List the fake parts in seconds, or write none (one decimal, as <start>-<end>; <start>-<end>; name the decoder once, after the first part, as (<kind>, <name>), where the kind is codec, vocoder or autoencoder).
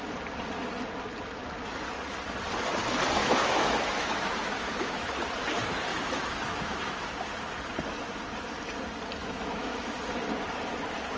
3.2-5.1 (autoencoder, DAC-VAE); 5.9-7.1; 9.2-10.0